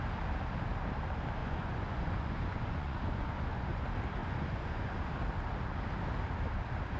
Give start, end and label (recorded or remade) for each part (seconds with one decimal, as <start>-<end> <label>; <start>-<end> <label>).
0.0-1.4 recorded; 1.4-3.8 remade; 3.8-4.2 recorded; 4.2-5.1 remade; 5.1-7.0 recorded